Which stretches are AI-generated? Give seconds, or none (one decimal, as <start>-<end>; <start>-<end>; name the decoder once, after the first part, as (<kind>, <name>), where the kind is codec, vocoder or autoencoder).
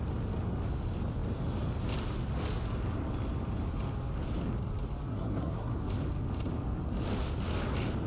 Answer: 5.1-5.7 (codec, SNAC)